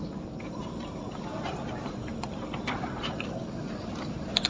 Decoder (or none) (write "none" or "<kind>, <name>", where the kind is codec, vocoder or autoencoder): vocoder, BigVGAN v2